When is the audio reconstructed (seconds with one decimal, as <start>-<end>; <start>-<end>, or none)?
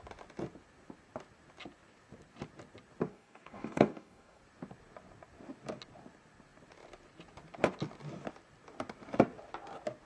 3.1-4.4